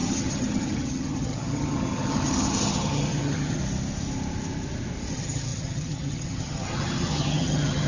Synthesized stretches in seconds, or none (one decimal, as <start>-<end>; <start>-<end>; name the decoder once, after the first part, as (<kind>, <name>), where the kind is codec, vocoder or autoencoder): 0.0-3.6 (vocoder, HiFi-GAN); 5.1-7.9